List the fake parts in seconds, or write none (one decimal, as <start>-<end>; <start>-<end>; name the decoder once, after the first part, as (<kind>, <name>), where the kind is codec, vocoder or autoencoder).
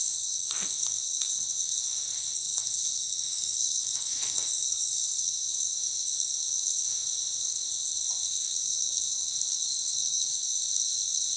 0.0-11.4 (codec, SNAC)